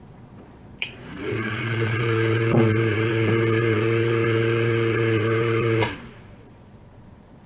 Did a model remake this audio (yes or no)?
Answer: yes